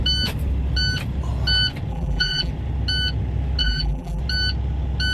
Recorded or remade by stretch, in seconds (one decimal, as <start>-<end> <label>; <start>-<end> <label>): 0.0-1.9 recorded; 1.9-2.5 remade; 2.5-3.6 recorded; 3.6-4.2 remade; 4.2-5.1 recorded